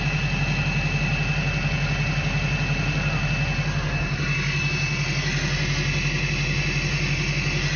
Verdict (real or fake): real